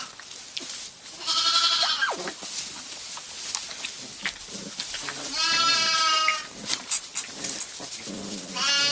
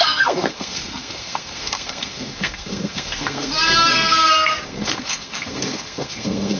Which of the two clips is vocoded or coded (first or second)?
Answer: second